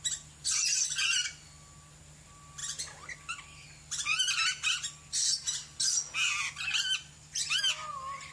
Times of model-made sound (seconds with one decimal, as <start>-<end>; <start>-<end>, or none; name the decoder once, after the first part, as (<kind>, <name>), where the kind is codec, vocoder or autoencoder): none